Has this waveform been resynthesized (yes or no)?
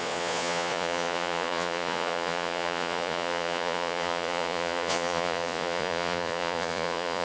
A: yes